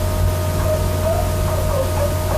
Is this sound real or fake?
real